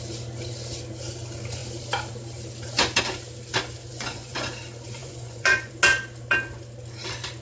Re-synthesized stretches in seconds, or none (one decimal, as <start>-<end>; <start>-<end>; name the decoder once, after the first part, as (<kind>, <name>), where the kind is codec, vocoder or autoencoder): 3.9-4.5 (vocoder, Vocos); 5.0-5.7